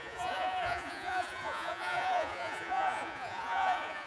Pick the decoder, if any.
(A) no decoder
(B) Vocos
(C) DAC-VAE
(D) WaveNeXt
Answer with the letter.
B